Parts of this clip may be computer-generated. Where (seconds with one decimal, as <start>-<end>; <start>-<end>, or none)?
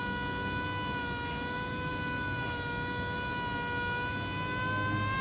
none